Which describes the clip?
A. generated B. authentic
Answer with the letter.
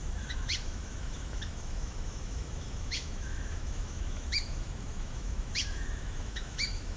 A